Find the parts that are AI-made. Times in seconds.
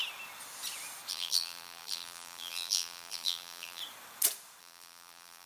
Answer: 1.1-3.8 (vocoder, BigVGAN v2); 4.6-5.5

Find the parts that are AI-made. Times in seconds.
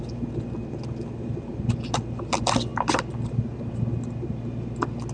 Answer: none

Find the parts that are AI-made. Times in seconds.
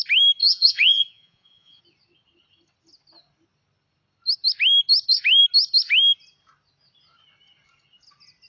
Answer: 0.4-1.8 (vocoder, Vocos)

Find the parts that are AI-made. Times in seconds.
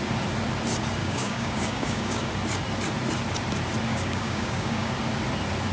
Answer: 1.0-2.3 (codec, DAC); 3.9-4.9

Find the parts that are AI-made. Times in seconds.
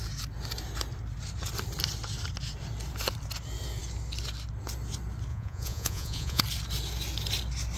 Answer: 5.3-6.4 (vocoder, Vocos)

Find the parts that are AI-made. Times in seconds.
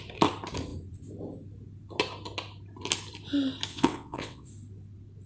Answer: 3.7-4.5 (vocoder, WaveNeXt)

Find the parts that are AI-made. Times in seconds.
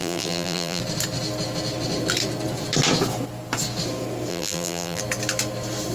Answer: 0.0-0.8 (vocoder, BigVGAN v2); 4.3-5.0